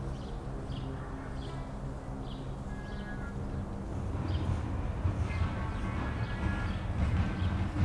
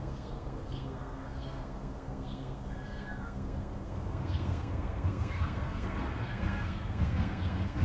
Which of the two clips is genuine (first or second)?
first